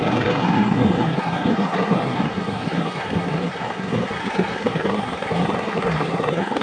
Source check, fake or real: fake